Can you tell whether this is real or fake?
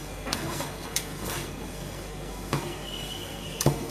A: fake